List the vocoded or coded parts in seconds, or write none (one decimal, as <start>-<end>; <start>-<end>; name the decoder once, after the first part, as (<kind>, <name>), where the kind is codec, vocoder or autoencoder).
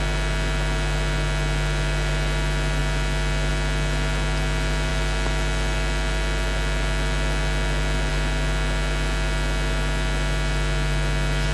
none